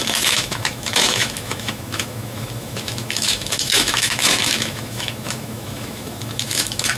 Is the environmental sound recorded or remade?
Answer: remade